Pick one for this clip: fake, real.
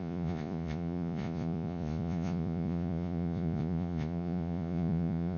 fake